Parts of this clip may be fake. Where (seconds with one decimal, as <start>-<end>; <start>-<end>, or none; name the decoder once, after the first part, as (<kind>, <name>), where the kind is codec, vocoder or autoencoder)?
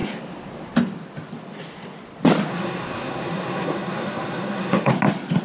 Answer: 2.5-4.9 (codec, SNAC)